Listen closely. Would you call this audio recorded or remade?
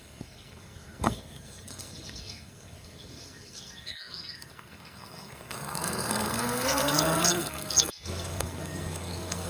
remade